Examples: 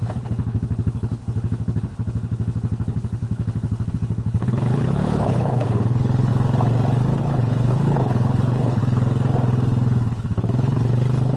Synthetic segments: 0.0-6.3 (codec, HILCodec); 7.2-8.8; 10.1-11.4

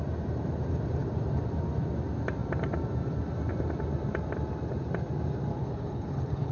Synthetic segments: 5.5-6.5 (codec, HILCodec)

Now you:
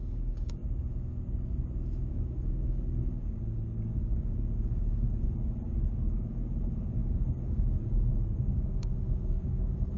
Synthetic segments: 0.0-0.6 (codec, DAC); 2.1-10.0